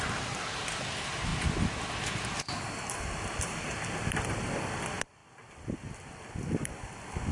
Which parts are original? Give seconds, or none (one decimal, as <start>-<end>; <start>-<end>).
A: 0.0-7.3